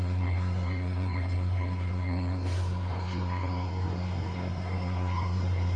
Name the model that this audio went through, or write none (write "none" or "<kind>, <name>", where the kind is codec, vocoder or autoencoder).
codec, SNAC